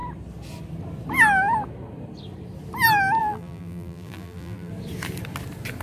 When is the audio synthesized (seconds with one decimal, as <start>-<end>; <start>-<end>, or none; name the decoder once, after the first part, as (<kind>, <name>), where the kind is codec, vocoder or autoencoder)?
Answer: 3.2-4.7 (vocoder, BigVGAN v2)